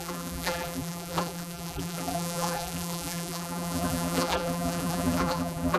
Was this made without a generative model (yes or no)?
no